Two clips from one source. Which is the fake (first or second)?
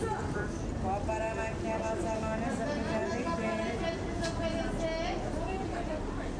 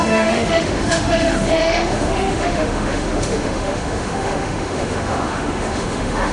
second